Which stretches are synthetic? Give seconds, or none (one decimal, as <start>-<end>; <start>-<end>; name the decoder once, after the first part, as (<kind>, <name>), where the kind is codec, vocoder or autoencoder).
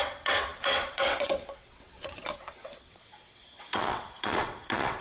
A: 0.0-5.0 (vocoder, WaveNeXt)